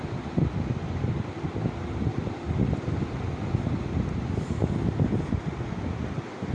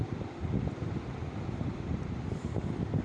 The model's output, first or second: second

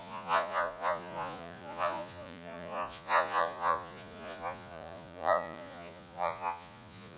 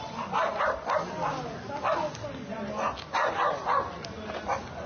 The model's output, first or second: first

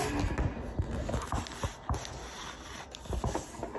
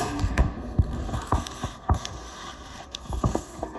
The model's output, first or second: second